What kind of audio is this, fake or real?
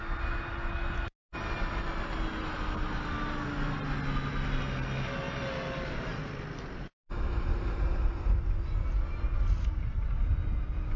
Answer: real